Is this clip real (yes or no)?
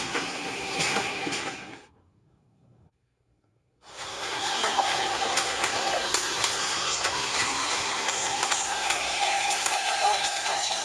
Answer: no